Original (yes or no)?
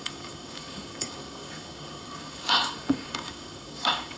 no